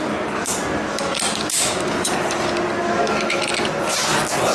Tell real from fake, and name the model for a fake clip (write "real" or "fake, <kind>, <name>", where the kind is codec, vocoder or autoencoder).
real